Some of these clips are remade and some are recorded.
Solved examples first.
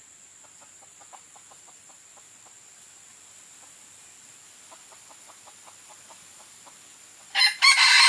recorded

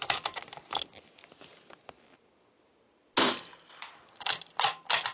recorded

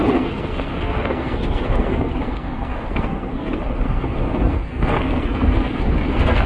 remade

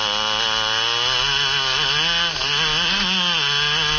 recorded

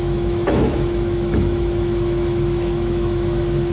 remade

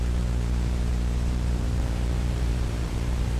remade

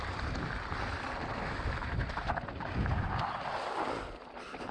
recorded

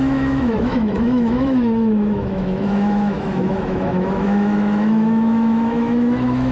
remade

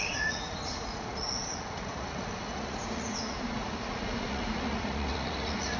remade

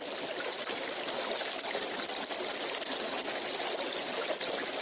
recorded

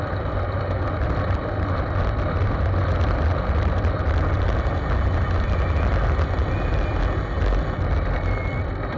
recorded